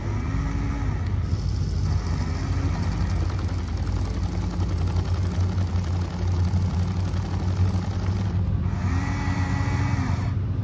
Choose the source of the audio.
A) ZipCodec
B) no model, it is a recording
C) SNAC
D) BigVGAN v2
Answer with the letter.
B